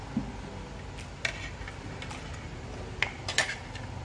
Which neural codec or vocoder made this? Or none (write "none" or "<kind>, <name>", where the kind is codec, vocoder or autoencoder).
none